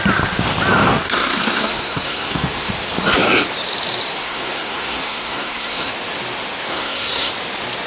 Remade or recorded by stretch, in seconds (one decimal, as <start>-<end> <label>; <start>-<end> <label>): 0.0-0.9 recorded; 0.9-2.7 remade; 2.7-4.2 recorded; 4.2-5.9 remade; 5.9-6.7 recorded; 6.7-7.3 remade; 7.3-7.9 recorded